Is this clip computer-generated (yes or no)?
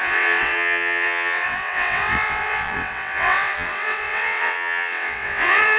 yes